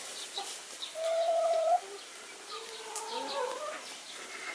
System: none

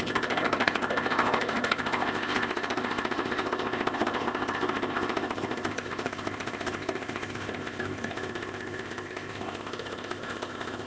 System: codec, ZipCodec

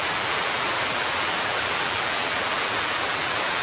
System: vocoder, BigVGAN v2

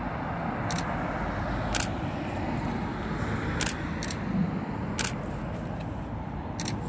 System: none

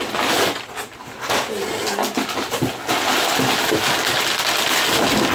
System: none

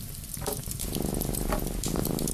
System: none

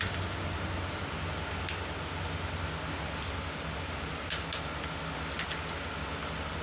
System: none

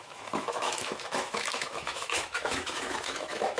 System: autoencoder, DAC-VAE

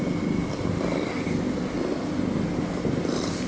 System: none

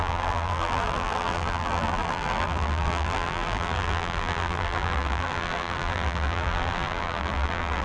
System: vocoder, BigVGAN v2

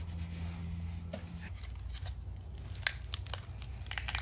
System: none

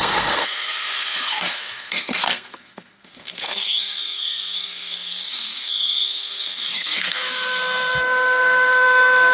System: codec, SNAC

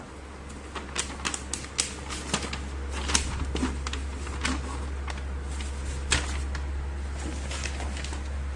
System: none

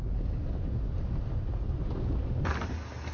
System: none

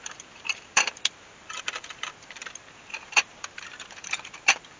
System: vocoder, BigVGAN v2